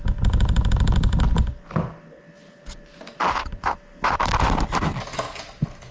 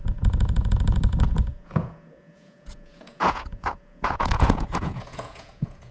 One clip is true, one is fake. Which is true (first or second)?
first